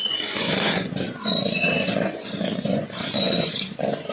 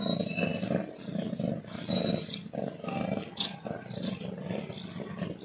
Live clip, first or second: second